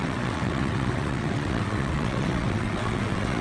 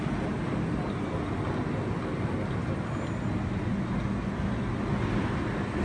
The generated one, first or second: first